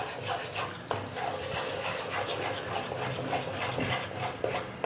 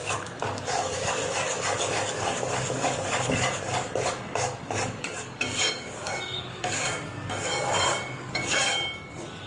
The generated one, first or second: second